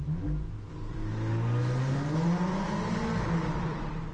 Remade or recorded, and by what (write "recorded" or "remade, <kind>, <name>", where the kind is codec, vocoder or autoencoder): recorded